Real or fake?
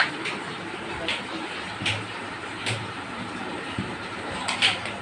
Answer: fake